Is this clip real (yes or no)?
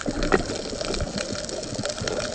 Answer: yes